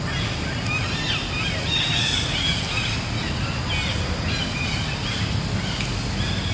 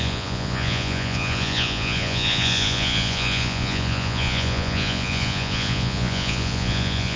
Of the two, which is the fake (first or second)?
second